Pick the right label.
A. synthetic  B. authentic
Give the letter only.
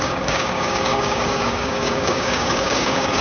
A